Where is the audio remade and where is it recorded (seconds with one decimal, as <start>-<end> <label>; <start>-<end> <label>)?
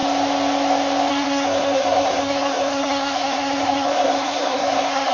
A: 0.0-1.1 recorded; 1.1-5.1 remade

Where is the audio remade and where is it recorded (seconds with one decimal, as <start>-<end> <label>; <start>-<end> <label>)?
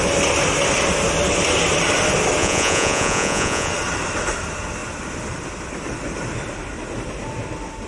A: 0.0-2.4 recorded; 2.4-3.7 remade; 3.7-7.9 recorded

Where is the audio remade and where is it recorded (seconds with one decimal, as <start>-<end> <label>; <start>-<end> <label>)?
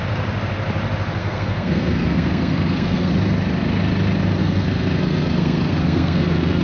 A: 0.0-1.2 recorded; 1.2-3.1 remade; 3.1-4.4 recorded; 4.4-6.6 remade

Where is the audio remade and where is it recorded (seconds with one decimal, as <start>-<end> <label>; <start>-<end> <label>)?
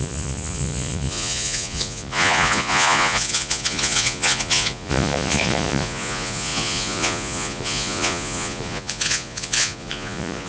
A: 0.0-10.5 remade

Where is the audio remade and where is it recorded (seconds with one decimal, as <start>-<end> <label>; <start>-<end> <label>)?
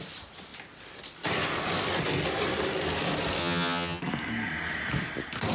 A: 0.0-3.4 recorded; 3.4-4.0 remade; 4.0-5.5 recorded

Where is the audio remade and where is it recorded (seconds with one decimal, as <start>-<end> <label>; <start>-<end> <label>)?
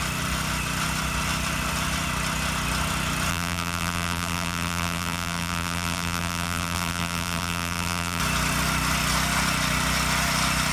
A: 0.0-3.3 recorded; 3.3-8.2 remade; 8.2-10.7 recorded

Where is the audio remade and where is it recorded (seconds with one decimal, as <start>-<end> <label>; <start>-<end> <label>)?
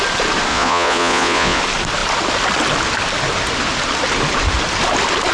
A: 0.0-0.5 recorded; 0.5-1.6 remade; 1.6-5.3 recorded